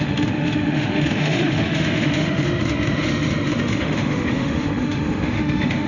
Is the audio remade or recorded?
remade